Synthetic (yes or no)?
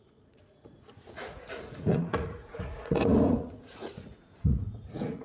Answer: yes